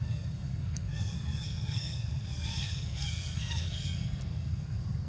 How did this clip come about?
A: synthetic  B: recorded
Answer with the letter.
A